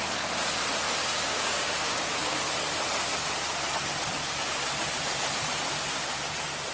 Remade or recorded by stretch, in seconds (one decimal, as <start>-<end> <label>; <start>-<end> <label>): 0.0-1.0 recorded; 1.0-2.4 remade; 2.4-6.7 recorded